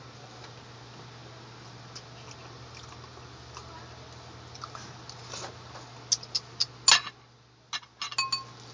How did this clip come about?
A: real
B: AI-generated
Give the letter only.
A